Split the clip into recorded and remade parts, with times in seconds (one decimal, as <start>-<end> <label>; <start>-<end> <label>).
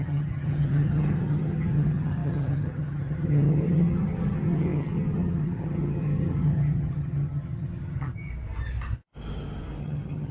0.0-8.3 remade; 8.3-9.8 recorded; 9.8-10.3 remade